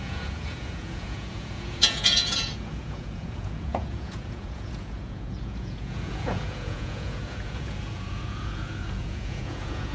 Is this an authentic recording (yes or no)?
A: no